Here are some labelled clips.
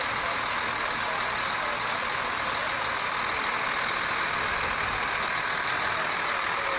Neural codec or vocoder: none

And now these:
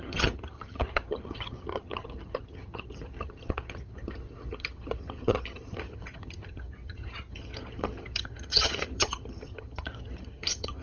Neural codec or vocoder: vocoder, HiFi-GAN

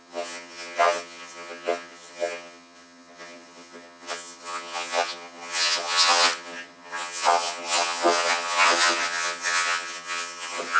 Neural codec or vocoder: vocoder, HiFi-GAN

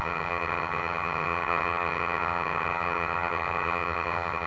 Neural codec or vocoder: vocoder, HiFi-GAN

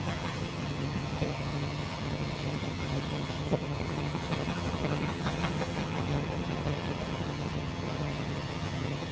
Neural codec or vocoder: vocoder, HiFi-GAN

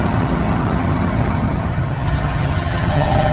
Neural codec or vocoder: vocoder, HiFi-GAN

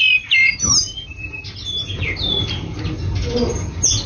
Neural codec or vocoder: none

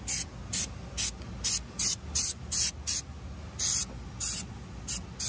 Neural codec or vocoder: none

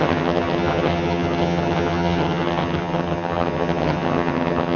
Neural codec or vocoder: vocoder, HiFi-GAN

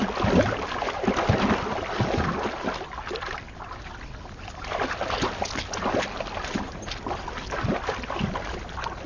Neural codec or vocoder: none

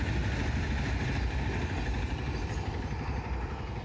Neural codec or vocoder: none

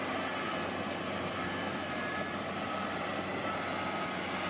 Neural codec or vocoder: none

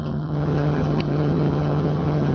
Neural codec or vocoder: vocoder, HiFi-GAN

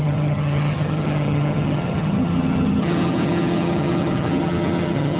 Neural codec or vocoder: vocoder, HiFi-GAN